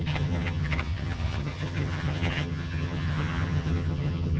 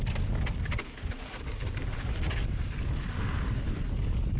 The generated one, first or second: first